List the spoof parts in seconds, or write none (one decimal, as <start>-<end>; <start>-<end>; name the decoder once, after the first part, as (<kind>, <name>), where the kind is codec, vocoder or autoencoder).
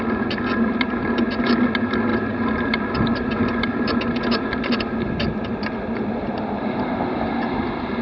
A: 2.1-6.6 (vocoder, BigVGAN v2)